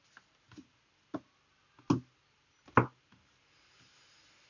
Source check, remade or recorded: recorded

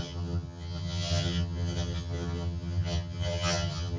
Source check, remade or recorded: remade